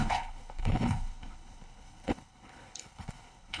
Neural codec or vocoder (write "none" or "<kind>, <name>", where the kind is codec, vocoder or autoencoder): codec, HILCodec